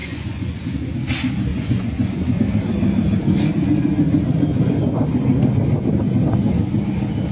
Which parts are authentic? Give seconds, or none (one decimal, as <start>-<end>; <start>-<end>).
0.6-1.5; 2.4-7.3